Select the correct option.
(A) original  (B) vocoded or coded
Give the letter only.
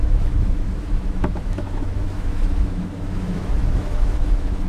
B